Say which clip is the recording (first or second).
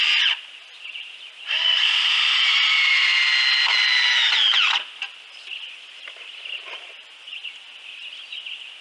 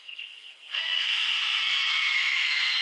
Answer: first